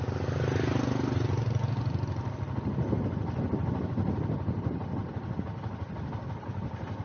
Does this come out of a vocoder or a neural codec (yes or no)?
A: no